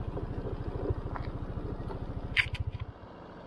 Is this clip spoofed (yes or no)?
no